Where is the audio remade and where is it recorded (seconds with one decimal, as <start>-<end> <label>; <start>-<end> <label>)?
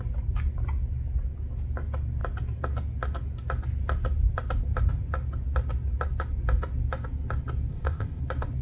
0.0-7.7 recorded; 7.7-8.2 remade; 8.2-8.6 recorded